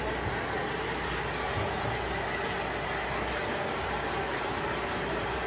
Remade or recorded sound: recorded